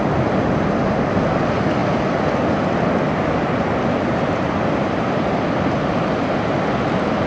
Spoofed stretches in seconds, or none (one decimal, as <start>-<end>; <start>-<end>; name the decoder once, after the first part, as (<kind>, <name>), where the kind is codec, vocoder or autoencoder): none